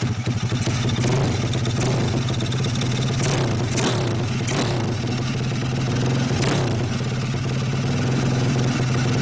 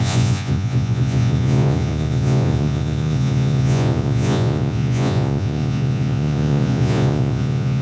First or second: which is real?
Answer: first